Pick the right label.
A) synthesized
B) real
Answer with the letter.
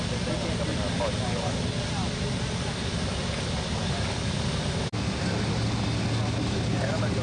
B